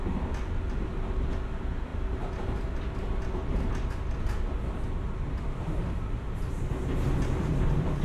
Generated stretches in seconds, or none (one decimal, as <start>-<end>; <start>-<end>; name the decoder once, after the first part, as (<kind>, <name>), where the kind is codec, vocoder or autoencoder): none